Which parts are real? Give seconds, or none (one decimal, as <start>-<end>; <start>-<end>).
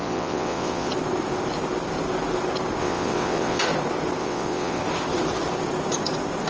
0.9-2.8; 3.6-4.2; 4.8-6.5